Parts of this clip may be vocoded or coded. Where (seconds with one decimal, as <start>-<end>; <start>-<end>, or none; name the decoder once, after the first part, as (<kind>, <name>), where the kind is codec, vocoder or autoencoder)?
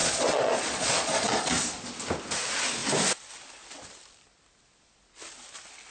0.0-1.5 (vocoder, Vocos)